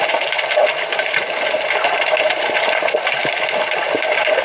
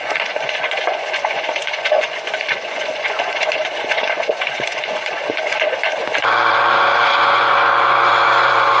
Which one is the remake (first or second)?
second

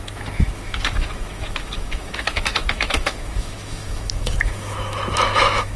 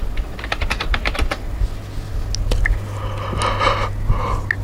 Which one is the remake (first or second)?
first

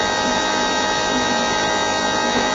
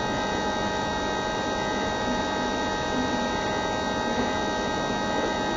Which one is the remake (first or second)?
first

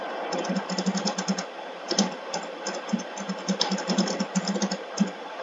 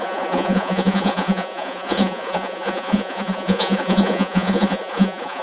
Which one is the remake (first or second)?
second